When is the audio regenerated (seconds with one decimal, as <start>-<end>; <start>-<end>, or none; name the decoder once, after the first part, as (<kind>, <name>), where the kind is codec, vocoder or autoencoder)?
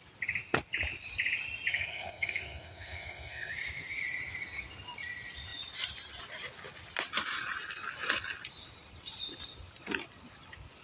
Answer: 1.7-3.5 (codec, SNAC)